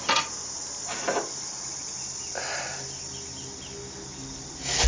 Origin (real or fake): real